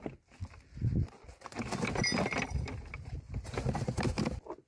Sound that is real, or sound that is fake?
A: real